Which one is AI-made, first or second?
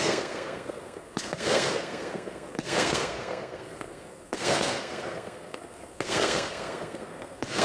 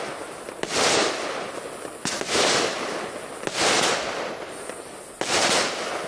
first